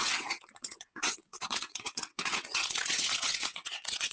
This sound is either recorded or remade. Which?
remade